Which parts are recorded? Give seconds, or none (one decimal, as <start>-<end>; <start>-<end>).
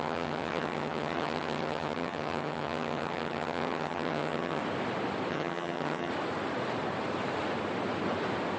4.6-5.3; 6.1-8.6